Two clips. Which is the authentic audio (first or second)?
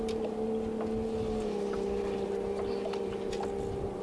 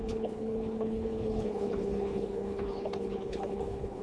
first